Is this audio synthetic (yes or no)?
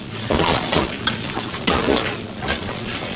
yes